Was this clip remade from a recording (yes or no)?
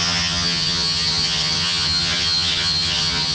yes